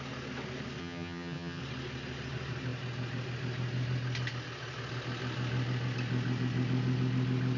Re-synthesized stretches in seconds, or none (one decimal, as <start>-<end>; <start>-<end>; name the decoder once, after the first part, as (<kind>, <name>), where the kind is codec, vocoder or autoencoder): 0.8-1.6 (vocoder, HiFi-GAN)